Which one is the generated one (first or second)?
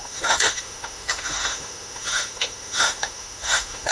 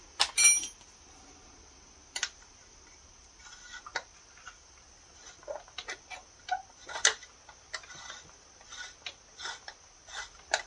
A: first